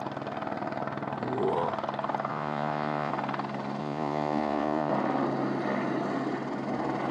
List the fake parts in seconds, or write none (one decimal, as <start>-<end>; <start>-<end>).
2.3-3.1; 3.8-4.9